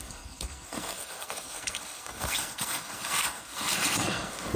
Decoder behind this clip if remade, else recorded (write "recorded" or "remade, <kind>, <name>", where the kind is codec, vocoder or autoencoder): remade, codec, SNAC